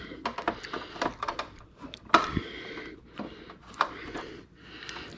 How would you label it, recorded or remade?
recorded